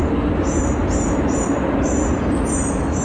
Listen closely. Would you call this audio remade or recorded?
remade